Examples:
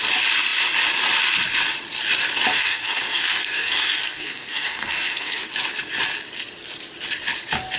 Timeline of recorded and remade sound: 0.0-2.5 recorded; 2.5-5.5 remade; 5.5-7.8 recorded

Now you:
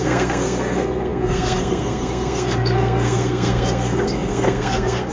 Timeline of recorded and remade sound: 0.0-5.1 remade

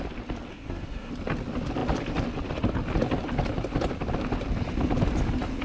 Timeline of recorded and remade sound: 0.0-0.5 recorded; 0.5-1.1 remade; 1.1-5.6 recorded

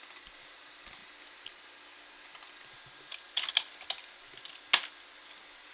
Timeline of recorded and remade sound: 0.0-5.7 recorded